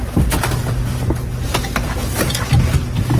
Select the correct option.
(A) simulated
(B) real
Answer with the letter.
B